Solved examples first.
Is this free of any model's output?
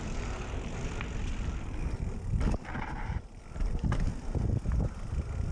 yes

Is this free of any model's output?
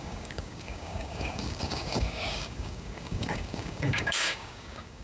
no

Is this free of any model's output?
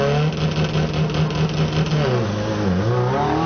yes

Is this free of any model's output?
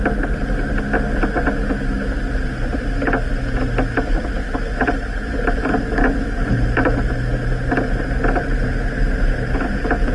yes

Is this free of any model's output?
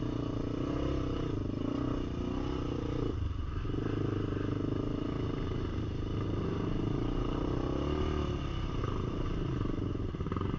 yes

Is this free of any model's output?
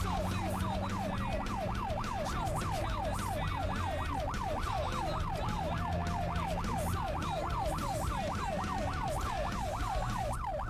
yes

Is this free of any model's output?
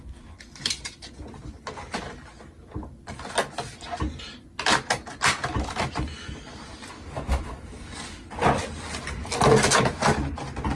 yes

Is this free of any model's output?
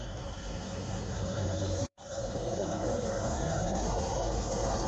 no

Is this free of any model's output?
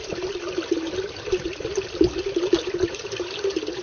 yes